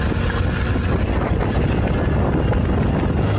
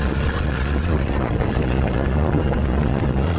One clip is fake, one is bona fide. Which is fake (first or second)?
second